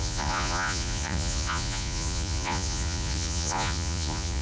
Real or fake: fake